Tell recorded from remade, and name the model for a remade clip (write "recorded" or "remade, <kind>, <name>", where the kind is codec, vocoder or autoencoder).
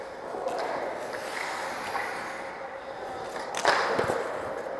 recorded